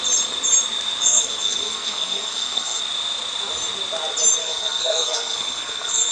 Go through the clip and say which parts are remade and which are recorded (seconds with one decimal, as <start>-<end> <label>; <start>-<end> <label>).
0.0-1.0 recorded; 1.0-2.8 remade; 2.8-4.4 recorded; 4.4-6.1 remade